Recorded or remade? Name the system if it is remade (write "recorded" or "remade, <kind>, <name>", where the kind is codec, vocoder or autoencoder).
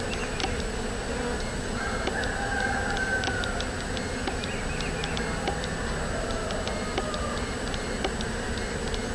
recorded